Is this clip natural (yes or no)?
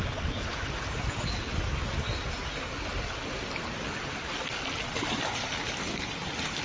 yes